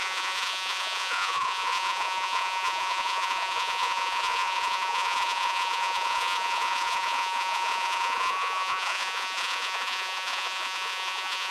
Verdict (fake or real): fake